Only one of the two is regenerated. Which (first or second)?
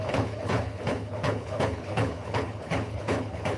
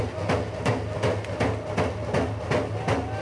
first